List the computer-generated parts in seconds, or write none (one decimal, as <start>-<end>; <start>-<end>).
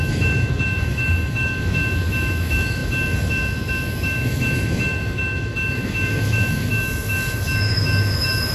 0.0-8.5